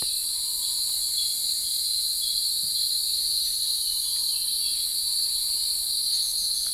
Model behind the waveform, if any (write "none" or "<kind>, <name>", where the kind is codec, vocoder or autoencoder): none